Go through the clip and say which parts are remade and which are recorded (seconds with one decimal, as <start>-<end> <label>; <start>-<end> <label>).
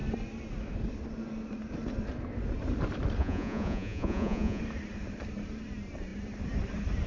0.0-3.2 recorded; 3.2-4.6 remade; 4.6-7.1 recorded